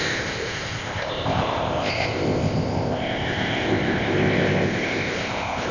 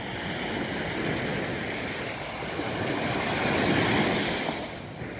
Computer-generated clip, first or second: first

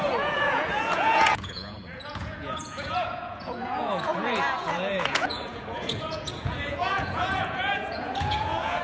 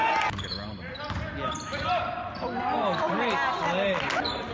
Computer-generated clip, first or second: first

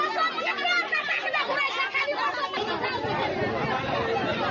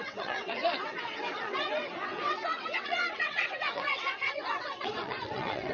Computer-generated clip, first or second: second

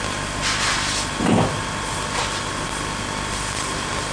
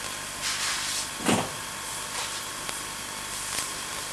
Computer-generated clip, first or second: second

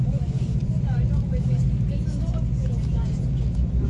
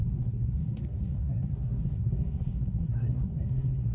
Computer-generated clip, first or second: second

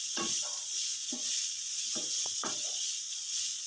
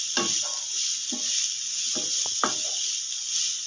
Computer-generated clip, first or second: first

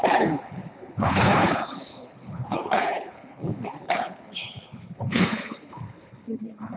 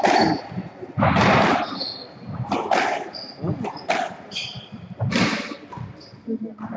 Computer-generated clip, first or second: first